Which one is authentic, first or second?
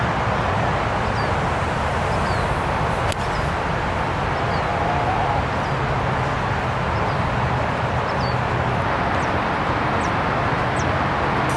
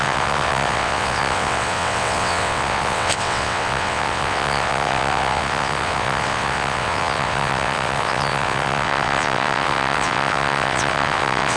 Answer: first